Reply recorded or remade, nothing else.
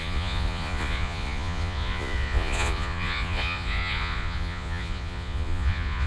remade